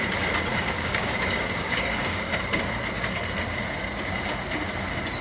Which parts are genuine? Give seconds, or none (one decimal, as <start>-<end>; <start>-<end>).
0.0-0.5; 2.4-5.2